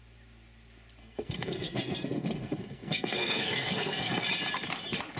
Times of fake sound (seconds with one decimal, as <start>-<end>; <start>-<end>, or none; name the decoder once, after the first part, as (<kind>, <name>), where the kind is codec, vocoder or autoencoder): 1.0-4.1 (codec, SNAC)